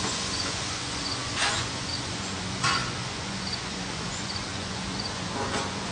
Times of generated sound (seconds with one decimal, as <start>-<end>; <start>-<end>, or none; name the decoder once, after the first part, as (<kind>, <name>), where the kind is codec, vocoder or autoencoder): 0.0-5.9 (vocoder, Vocos)